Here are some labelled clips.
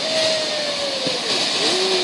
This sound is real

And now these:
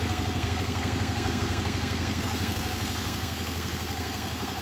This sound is fake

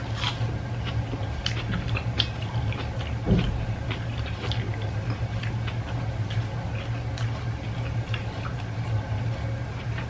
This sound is real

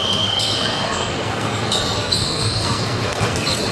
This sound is fake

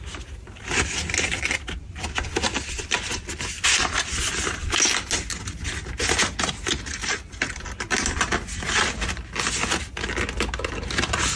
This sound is real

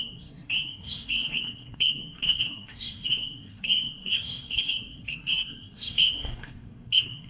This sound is fake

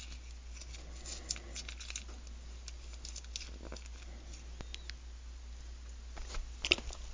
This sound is real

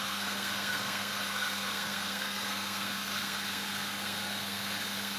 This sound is fake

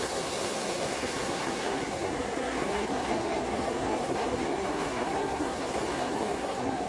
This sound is fake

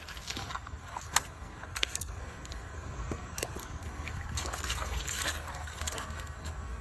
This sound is fake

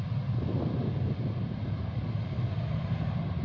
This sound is real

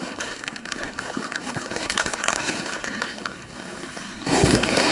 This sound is fake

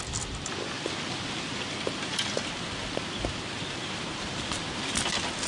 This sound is real